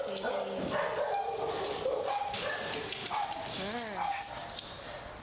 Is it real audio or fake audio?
real